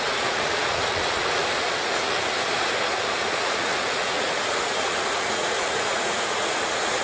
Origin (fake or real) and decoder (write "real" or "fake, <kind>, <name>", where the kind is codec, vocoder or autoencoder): fake, vocoder, Vocos